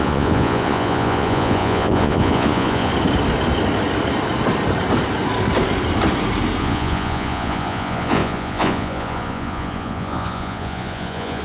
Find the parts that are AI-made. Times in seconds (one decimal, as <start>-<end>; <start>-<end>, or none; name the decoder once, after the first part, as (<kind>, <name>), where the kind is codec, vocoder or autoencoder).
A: 0.0-2.9 (vocoder, Vocos); 6.6-11.4